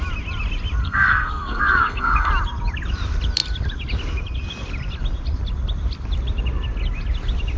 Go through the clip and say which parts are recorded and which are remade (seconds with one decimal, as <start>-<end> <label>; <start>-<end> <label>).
0.0-0.8 recorded; 0.8-2.3 remade; 2.3-7.6 recorded